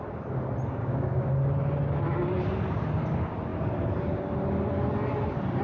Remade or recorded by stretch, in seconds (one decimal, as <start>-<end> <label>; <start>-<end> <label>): 0.0-0.8 recorded; 0.8-1.3 remade; 1.3-5.6 recorded